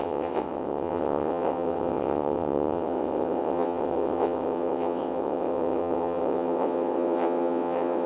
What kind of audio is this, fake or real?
fake